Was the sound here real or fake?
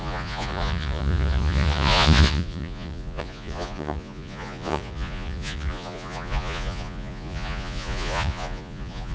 fake